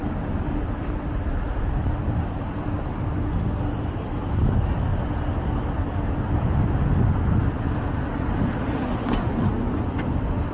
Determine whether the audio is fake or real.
real